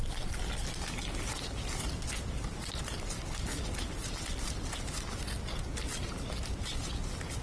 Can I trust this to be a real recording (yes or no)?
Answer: yes